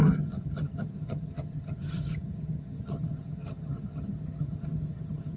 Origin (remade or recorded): remade